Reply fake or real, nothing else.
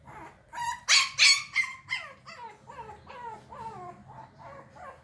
real